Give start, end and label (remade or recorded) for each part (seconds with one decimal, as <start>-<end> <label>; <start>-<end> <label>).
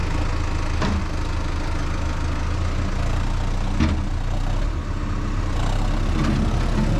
0.0-7.0 recorded